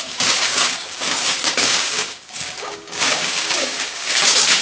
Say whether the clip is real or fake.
fake